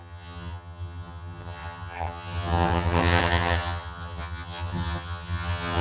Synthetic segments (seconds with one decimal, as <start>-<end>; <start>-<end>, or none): 0.0-5.8